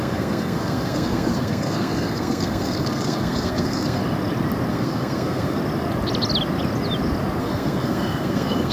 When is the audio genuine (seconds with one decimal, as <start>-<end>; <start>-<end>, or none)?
4.0-4.7; 5.6-7.4